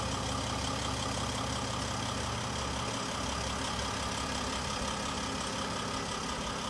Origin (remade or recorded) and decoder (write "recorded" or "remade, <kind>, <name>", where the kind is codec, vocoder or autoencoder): recorded